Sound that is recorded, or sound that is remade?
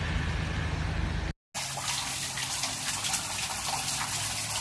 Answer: recorded